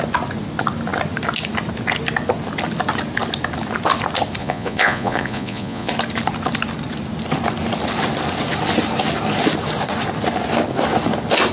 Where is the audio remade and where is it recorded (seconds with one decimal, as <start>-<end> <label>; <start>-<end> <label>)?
0.0-4.4 recorded; 4.4-5.9 remade; 5.9-11.5 recorded